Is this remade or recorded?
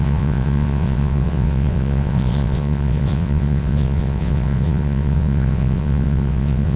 remade